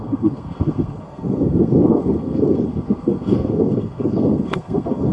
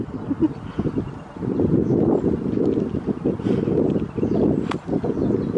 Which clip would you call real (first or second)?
second